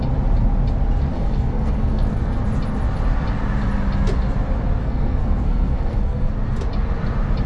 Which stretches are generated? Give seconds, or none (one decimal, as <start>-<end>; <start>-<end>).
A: 1.1-2.4; 4.8-6.3